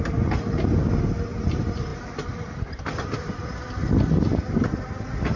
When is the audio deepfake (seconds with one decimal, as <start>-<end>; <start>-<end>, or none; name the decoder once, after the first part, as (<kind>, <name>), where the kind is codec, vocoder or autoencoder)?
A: none